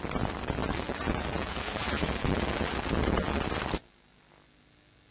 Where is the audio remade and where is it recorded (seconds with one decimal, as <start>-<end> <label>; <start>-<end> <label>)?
0.0-0.6 recorded; 0.6-2.7 remade; 2.7-5.1 recorded